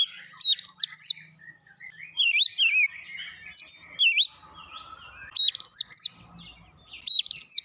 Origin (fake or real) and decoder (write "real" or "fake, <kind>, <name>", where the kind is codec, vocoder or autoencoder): real